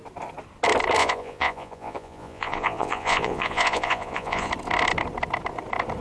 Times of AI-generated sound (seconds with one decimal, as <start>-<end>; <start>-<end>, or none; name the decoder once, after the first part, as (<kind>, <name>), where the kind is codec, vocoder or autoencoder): 1.0-4.5 (vocoder, Vocos)